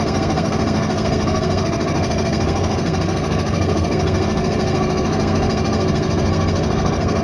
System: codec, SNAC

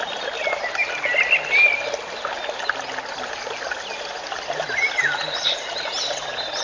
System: none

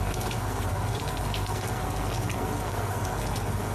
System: codec, SNAC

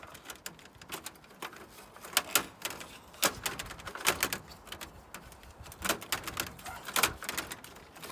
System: none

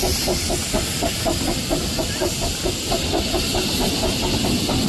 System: none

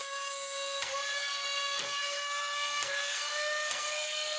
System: codec, SNAC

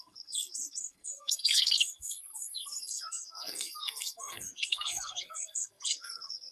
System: codec, SNAC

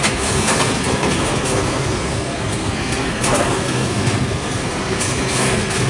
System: codec, SNAC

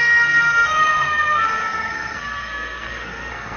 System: codec, SNAC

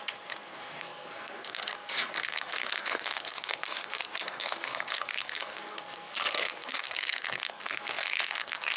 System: codec, SNAC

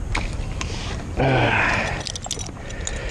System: none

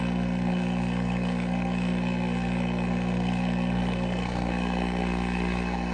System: codec, SNAC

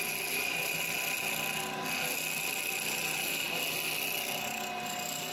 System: none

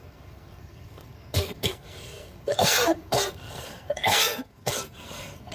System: codec, SNAC